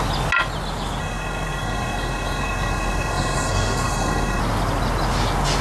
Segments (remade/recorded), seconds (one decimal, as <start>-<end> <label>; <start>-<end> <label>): 0.0-1.0 recorded; 1.0-4.4 remade; 4.4-5.6 recorded